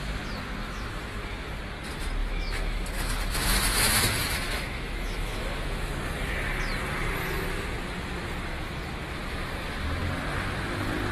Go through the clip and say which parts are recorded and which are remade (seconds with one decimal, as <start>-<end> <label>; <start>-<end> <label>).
0.0-0.6 recorded; 0.6-1.6 remade; 1.6-2.2 recorded; 2.2-5.9 remade; 5.9-11.1 recorded